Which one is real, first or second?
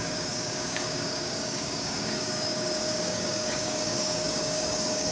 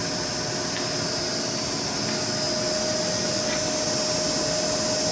second